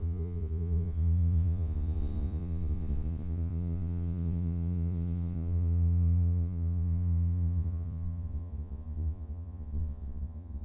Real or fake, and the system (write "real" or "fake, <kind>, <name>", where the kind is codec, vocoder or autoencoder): fake, vocoder, Vocos